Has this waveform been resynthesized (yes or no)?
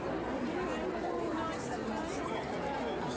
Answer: no